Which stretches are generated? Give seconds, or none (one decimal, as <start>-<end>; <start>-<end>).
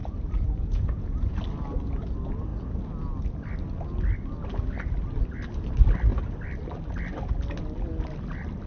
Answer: 0.0-1.4